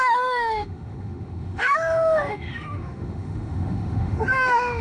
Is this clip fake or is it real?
fake